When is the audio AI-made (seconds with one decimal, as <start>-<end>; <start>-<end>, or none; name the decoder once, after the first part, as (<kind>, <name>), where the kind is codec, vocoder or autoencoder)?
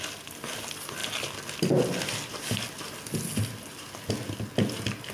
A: none